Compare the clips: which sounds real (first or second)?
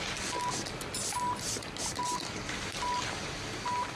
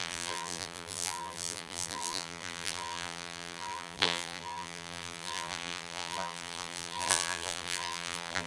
first